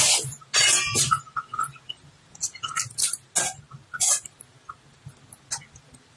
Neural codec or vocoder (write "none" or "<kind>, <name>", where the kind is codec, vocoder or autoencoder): none